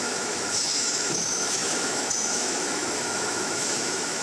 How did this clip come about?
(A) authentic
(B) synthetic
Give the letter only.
B